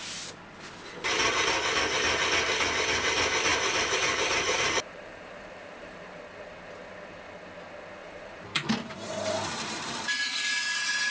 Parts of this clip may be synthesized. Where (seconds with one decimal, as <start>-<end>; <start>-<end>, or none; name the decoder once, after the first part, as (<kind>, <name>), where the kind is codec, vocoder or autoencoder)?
3.5-6.2 (vocoder, BigVGAN v2); 8.0-10.0